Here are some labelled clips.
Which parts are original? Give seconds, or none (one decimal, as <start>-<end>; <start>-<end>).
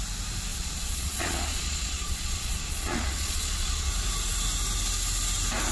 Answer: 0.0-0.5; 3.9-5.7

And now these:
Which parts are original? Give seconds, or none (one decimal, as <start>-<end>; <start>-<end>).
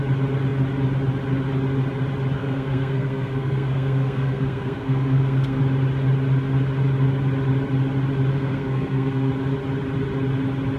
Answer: 0.0-2.4; 5.6-8.3; 9.3-10.8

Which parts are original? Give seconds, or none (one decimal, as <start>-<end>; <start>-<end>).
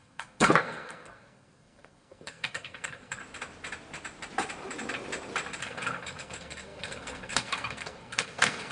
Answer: 3.2-5.6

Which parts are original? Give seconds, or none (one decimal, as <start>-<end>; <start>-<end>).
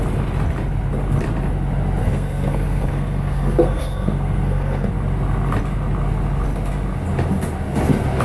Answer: 0.0-2.0; 4.9-8.2